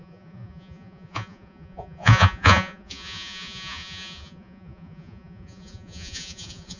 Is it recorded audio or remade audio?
remade